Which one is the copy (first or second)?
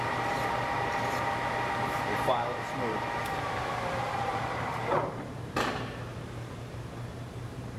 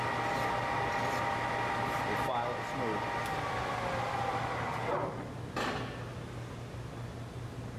first